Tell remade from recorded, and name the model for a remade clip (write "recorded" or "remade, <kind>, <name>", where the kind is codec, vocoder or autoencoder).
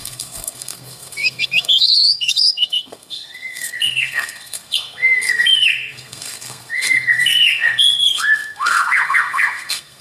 remade, codec, SNAC